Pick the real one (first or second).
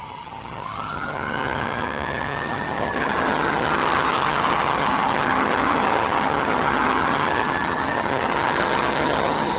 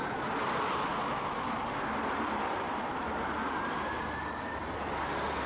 second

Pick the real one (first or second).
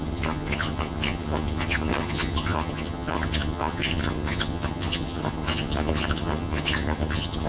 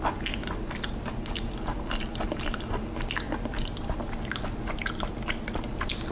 second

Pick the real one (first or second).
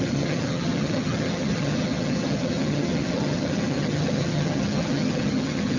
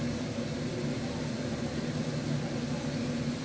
second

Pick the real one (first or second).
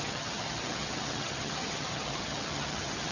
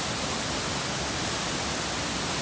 second